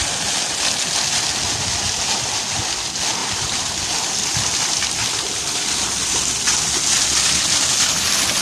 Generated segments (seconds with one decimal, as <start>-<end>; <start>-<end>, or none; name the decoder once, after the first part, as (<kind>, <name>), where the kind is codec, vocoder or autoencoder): none